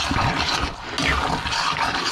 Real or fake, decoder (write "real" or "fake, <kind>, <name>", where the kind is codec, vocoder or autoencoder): real